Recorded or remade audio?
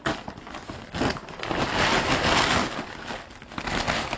recorded